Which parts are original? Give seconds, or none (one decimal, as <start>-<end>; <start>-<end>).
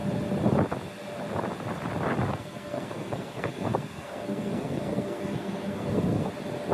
0.0-2.3; 6.3-6.7